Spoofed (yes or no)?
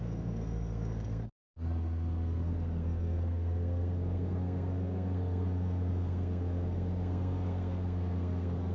yes